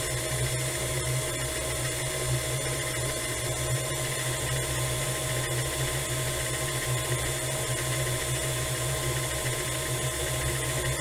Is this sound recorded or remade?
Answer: recorded